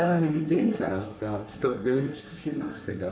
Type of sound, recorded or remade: remade